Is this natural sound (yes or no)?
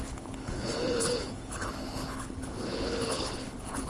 no